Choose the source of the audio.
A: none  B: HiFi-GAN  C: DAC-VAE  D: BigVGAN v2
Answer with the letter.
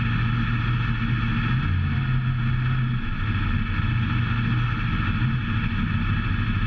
A